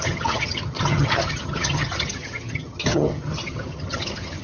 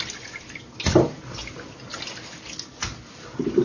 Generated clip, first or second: first